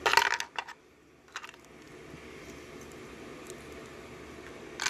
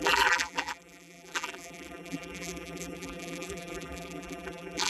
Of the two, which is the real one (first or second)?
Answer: first